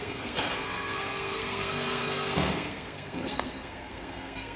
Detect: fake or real fake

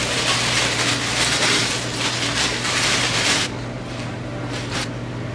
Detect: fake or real real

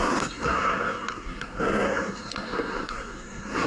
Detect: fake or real fake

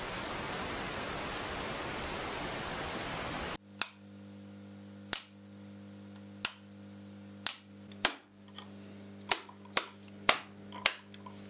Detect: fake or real real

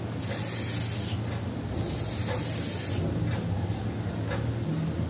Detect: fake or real real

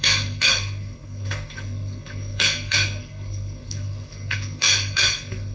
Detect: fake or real fake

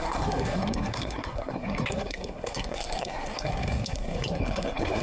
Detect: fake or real fake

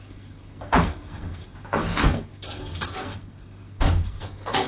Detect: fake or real fake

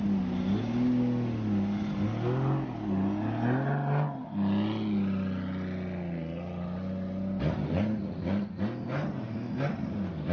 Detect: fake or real real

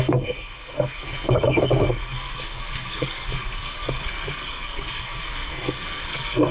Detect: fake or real fake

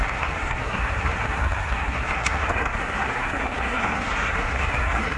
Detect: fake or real fake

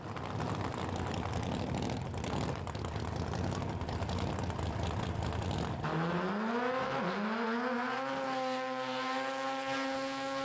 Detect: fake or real real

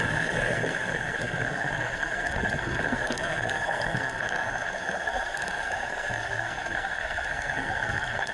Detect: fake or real fake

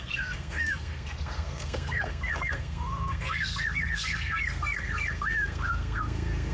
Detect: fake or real fake